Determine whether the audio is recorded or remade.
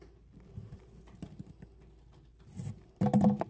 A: recorded